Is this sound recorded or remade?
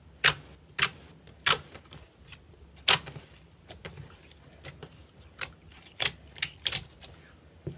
recorded